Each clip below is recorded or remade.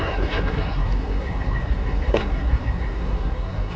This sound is remade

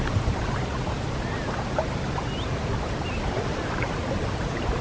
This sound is recorded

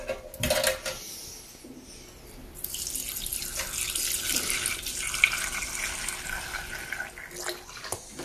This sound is recorded